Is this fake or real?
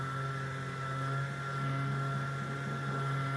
real